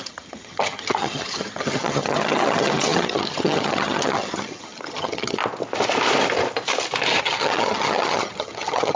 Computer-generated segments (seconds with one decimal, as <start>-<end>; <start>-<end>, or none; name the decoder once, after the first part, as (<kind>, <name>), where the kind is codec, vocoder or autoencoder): 0.0-5.4 (vocoder, HiFi-GAN); 7.2-9.0